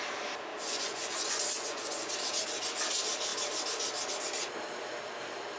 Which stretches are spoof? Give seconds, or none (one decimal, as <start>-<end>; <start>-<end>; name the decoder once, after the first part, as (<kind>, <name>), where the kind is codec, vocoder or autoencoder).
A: 0.5-2.1 (vocoder, Vocos)